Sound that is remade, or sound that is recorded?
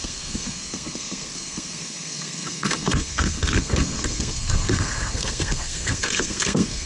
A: remade